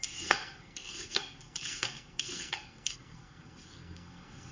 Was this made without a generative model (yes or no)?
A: no